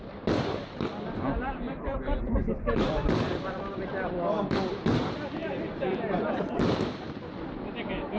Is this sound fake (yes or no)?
yes